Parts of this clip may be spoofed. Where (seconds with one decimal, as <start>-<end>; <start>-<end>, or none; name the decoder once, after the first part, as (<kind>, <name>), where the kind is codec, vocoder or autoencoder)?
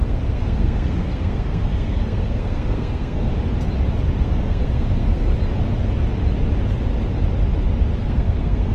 0.0-3.3 (codec, SNAC); 4.2-5.3; 8.0-8.7